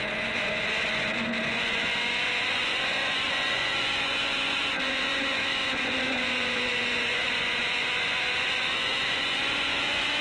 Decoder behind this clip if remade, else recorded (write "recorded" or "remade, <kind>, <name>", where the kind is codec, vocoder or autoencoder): remade, vocoder, Vocos